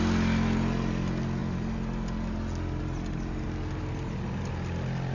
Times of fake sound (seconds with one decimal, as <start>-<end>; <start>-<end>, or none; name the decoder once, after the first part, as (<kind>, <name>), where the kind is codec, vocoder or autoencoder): none